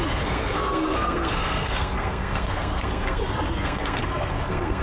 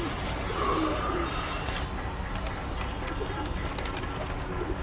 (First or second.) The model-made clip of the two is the first